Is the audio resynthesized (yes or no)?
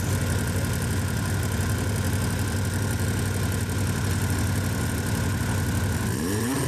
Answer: no